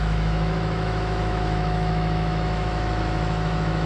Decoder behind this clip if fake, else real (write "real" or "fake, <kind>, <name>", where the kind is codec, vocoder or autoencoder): fake, autoencoder, DAC-VAE